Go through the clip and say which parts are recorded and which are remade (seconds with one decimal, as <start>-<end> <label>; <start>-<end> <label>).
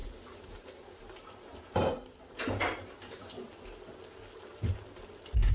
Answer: 0.0-3.3 remade; 3.3-5.5 recorded